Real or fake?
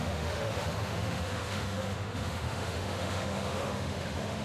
fake